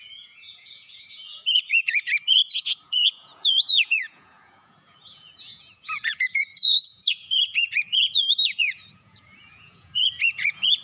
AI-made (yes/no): yes